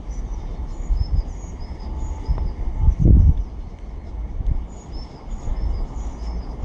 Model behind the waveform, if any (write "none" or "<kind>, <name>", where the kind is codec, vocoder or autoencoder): none